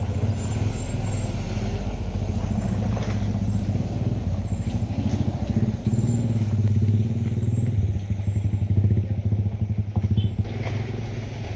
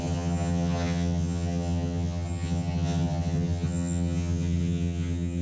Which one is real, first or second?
first